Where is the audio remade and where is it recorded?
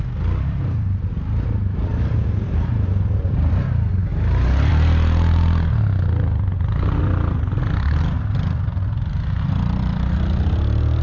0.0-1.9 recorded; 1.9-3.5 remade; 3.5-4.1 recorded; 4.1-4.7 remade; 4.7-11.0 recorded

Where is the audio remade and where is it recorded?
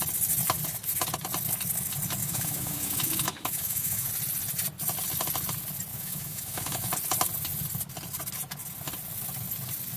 0.0-2.2 recorded; 2.2-4.1 remade; 4.1-5.9 recorded; 5.9-6.9 remade; 6.9-10.0 recorded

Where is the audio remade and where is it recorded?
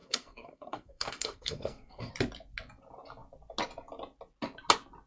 0.0-2.1 remade; 2.1-5.1 recorded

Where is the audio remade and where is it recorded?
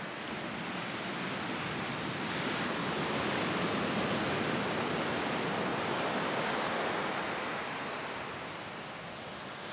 0.0-9.7 recorded